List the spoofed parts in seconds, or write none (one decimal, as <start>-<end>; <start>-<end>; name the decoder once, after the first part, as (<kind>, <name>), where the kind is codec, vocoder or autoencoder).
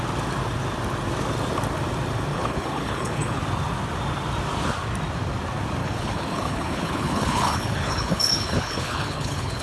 2.3-3.4 (codec, HILCodec); 5.8-9.6